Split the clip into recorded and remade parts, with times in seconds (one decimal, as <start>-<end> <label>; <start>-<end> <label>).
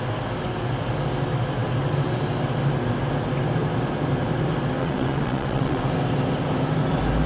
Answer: 0.0-4.8 recorded; 4.8-5.9 remade; 5.9-7.3 recorded